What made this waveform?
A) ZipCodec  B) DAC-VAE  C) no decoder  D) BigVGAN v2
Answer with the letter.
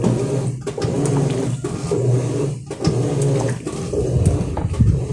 C